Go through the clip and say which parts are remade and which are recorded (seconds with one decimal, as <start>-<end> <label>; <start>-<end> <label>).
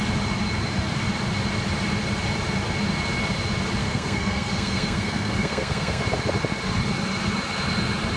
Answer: 0.0-3.8 recorded; 3.8-6.0 remade; 6.0-8.2 recorded